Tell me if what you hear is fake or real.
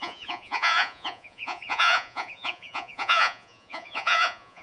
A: fake